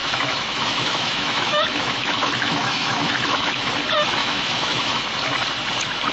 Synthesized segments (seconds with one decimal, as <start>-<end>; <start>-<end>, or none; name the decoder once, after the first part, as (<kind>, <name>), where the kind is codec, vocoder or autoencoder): 0.0-3.7 (autoencoder, DAC-VAE); 4.2-5.0